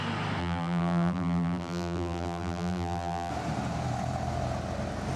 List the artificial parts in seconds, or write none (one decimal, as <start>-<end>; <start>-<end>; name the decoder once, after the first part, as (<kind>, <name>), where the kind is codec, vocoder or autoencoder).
0.4-3.3 (vocoder, BigVGAN v2)